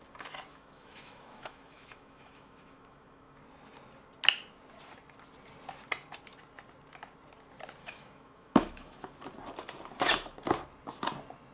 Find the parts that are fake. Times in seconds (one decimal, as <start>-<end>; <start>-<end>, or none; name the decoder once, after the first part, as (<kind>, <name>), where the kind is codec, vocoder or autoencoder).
0.5-3.4 (autoencoder, DAC-VAE); 7.8-9.1